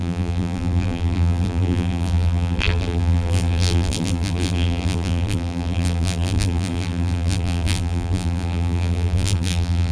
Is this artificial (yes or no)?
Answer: yes